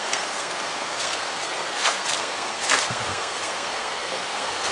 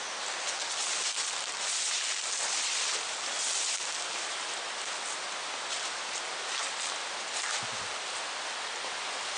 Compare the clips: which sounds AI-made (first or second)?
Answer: first